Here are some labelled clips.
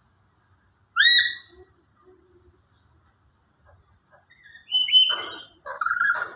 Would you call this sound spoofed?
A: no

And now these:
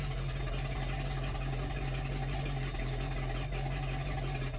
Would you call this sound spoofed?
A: no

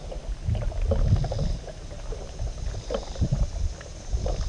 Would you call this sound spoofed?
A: no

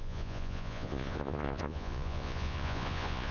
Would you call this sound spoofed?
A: yes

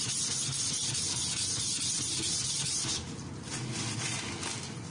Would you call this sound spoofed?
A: no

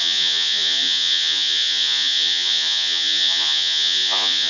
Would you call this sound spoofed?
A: yes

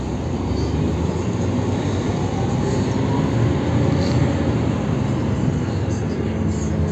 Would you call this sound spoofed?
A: no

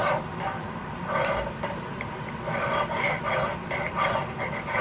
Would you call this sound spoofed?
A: no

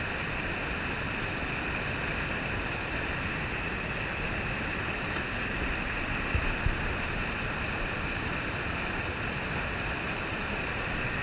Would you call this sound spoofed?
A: no